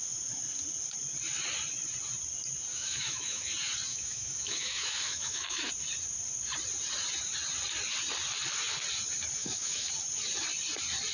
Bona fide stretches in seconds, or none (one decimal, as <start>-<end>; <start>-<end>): 0.0-2.7; 3.5-3.9; 5.7-9.4; 9.9-11.1